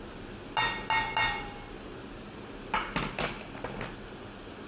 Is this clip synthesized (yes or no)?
no